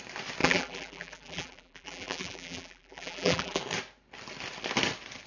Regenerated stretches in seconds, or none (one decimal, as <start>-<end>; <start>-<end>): 0.4-3.6